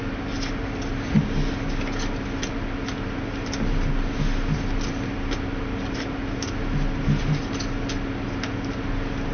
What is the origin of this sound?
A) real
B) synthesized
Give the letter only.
A